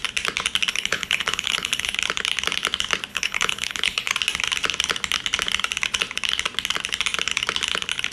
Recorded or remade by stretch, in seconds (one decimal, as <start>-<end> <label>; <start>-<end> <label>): 0.0-0.7 recorded; 0.7-1.9 remade; 1.9-3.1 recorded; 3.1-4.1 remade; 4.1-8.1 recorded